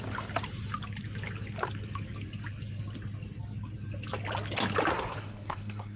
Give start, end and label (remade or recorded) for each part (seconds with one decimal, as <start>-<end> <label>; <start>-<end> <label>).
0.0-4.9 recorded; 4.9-6.0 remade